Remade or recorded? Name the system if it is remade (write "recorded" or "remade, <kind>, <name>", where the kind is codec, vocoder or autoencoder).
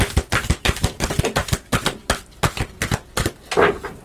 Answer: recorded